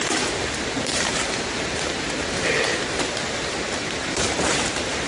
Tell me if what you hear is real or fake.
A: fake